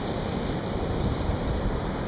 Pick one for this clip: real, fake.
real